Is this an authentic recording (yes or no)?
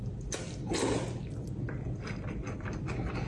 yes